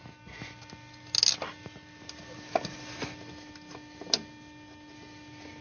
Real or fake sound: real